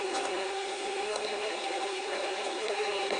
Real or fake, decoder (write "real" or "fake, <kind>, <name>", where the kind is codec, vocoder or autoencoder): fake, codec, SNAC